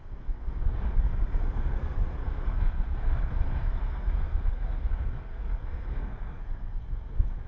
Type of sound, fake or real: fake